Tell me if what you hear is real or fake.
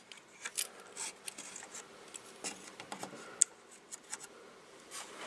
real